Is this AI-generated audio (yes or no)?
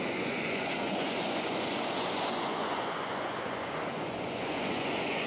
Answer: yes